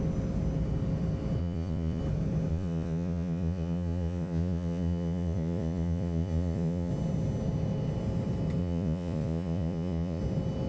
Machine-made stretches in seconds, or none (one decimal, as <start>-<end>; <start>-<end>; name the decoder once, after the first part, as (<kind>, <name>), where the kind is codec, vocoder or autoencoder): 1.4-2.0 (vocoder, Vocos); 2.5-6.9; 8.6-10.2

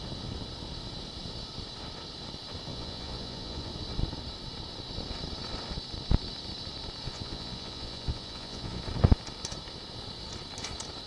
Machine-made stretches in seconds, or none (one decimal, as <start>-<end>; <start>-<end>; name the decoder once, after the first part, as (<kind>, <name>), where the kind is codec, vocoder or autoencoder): 2.7-3.7 (vocoder, Vocos); 7.1-8.8

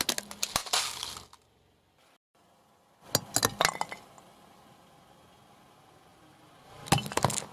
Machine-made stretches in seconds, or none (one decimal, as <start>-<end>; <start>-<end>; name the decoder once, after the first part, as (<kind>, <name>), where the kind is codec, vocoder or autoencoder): none